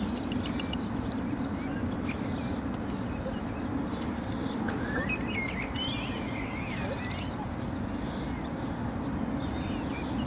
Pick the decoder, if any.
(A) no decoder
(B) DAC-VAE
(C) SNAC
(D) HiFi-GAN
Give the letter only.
A